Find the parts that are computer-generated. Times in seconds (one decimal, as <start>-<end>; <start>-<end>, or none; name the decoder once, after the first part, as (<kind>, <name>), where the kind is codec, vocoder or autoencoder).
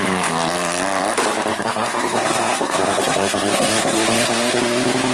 1.5-4.6 (codec, SNAC)